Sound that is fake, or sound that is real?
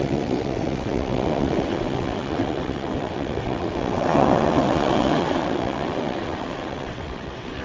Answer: fake